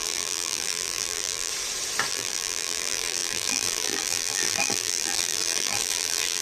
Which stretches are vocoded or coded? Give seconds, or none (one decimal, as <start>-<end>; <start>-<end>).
0.0-1.5; 2.1-6.4